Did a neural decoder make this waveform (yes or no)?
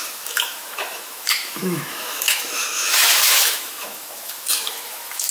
yes